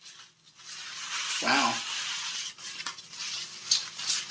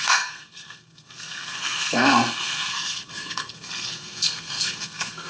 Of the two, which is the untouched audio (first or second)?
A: first